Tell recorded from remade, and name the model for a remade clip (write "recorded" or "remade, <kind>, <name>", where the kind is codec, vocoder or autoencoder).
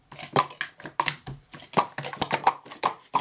recorded